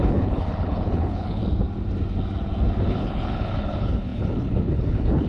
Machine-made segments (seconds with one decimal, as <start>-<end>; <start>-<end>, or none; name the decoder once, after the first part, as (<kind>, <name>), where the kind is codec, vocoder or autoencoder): 0.0-1.4 (codec, HILCodec); 2.9-5.3